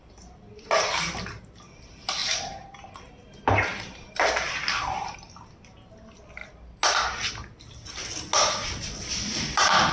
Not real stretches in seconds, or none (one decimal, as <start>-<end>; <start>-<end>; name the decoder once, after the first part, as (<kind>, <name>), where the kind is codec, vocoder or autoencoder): none